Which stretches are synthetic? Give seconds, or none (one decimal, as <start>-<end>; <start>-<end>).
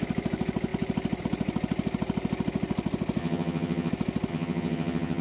3.2-3.9; 4.3-5.2